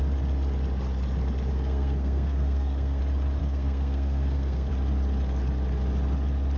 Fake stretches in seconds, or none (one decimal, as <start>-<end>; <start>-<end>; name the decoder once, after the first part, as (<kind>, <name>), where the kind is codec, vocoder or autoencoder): 1.5-3.0 (codec, SNAC); 3.4-4.7